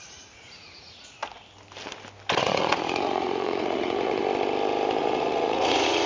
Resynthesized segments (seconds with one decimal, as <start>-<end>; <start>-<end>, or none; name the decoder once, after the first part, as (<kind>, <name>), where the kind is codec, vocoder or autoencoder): 0.0-1.2 (vocoder, Vocos); 2.4-4.2; 5.0-6.1